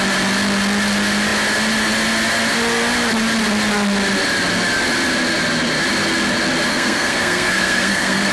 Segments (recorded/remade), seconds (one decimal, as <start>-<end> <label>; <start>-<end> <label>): 0.0-6.7 recorded; 6.7-8.3 remade